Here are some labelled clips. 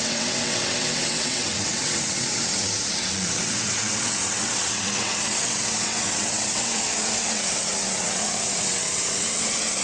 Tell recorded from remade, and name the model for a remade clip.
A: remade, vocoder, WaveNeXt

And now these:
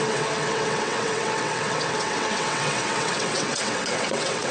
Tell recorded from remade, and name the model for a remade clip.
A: remade, vocoder, WaveNeXt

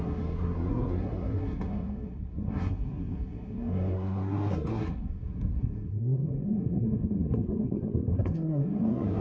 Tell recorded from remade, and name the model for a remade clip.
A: remade, codec, SNAC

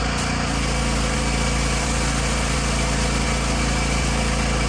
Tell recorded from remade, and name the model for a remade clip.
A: recorded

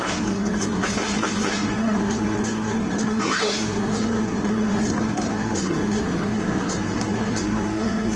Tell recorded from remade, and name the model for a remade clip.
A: remade, codec, SNAC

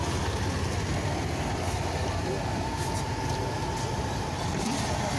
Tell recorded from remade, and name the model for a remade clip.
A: recorded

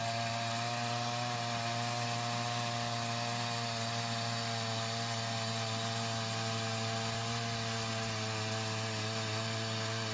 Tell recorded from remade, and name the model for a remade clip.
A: recorded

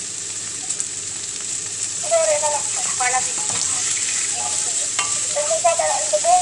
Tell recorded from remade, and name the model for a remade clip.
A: remade, vocoder, BigVGAN v2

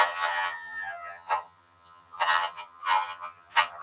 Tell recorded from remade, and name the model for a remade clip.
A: remade, vocoder, HiFi-GAN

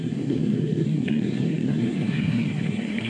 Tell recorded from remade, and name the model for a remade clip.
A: remade, codec, SNAC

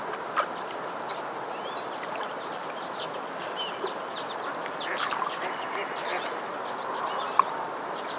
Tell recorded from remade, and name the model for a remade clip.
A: recorded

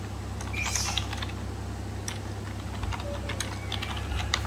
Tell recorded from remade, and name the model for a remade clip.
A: recorded